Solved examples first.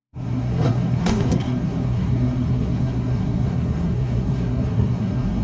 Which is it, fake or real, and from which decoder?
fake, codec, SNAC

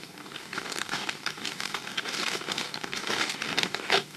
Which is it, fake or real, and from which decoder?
fake, codec, DAC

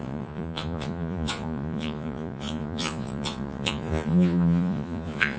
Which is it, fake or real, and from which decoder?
fake, vocoder, Vocos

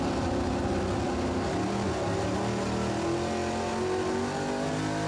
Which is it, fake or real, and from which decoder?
real